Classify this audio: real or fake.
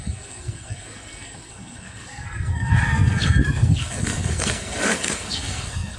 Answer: fake